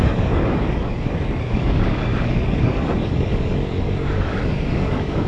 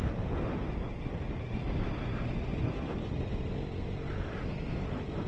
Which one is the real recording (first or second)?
second